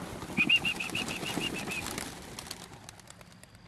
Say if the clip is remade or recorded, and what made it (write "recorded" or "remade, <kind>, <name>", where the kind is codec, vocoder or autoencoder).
recorded